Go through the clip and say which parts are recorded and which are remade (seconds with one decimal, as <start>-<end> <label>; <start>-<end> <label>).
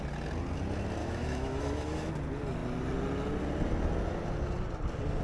0.0-1.0 recorded; 1.0-2.1 remade; 2.1-5.2 recorded